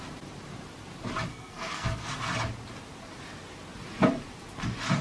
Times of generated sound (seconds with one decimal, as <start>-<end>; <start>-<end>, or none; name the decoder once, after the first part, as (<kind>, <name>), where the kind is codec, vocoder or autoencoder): 1.3-2.1 (codec, SNAC)